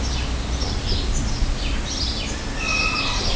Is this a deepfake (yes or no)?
no